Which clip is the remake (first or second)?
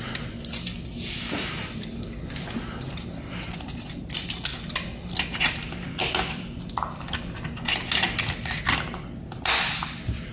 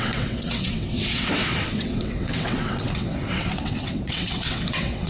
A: second